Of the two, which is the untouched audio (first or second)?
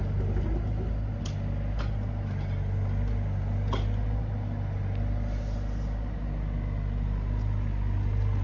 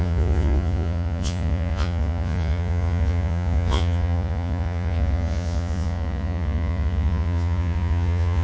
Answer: first